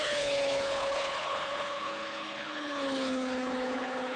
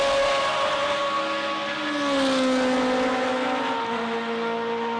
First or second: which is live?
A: second